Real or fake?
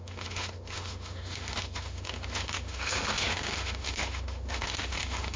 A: fake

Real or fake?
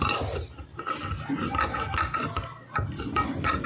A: real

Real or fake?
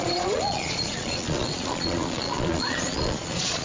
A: fake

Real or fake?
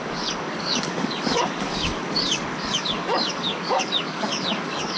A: fake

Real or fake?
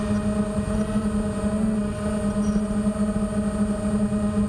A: real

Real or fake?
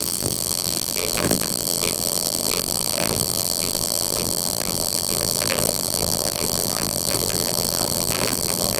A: fake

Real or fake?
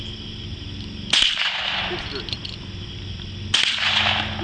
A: real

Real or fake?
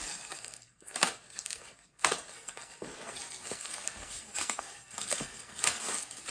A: fake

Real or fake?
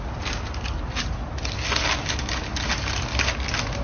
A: real